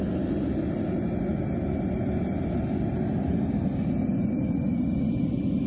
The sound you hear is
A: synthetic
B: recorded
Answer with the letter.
B